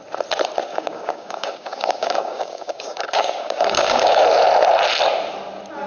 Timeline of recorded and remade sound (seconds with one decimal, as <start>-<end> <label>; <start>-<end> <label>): 0.0-0.7 recorded; 0.7-4.2 remade; 4.2-5.9 recorded